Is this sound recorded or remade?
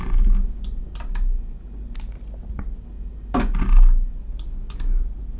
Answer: recorded